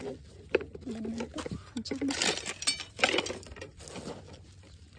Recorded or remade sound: recorded